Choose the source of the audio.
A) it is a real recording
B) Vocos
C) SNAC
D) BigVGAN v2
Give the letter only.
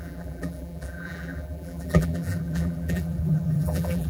D